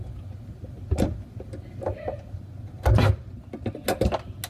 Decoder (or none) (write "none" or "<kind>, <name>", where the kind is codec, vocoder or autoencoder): none